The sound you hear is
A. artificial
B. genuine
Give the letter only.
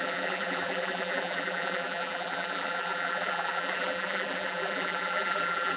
A